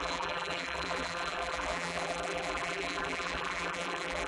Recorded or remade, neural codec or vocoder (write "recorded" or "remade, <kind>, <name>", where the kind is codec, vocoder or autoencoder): remade, vocoder, BigVGAN v2